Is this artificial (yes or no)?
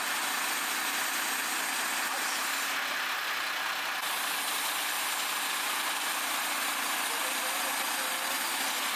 no